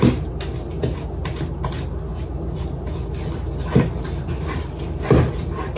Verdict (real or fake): real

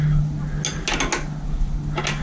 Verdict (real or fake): real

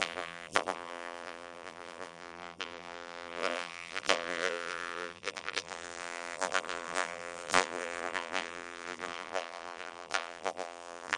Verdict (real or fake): fake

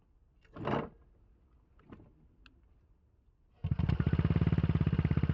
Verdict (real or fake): real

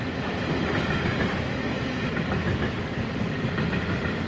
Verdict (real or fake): real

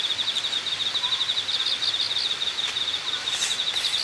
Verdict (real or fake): real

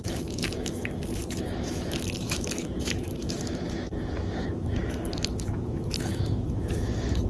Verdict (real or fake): fake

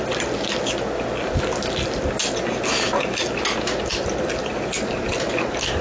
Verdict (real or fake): real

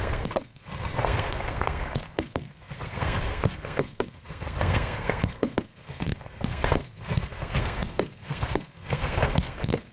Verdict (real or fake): fake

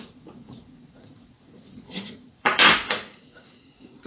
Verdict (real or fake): fake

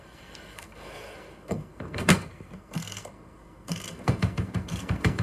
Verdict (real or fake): fake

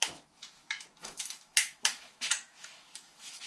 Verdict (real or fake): fake